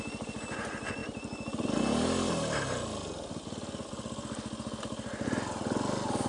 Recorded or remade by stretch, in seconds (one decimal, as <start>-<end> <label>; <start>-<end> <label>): 0.0-6.3 recorded